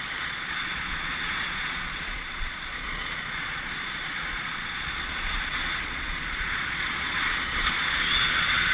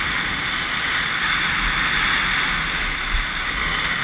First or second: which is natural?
second